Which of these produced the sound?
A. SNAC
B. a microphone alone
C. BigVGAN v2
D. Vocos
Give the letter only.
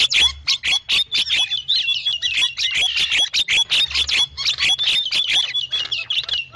B